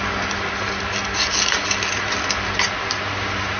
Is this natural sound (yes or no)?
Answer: yes